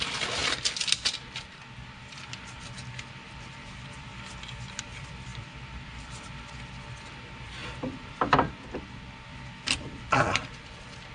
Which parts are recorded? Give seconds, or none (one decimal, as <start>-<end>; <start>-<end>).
0.4-2.1; 4.1-4.8